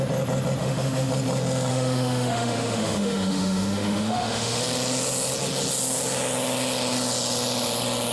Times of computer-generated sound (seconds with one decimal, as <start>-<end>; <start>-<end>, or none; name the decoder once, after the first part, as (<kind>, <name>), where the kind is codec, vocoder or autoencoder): 0.6-1.1 (autoencoder, DAC-VAE); 1.7-4.6